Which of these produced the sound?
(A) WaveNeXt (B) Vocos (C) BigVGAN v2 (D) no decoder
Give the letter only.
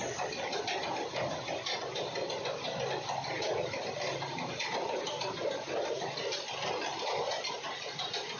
D